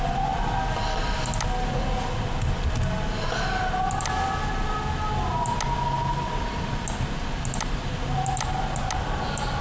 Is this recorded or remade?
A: recorded